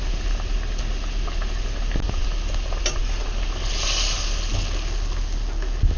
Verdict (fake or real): real